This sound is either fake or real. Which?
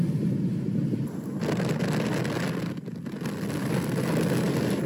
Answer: real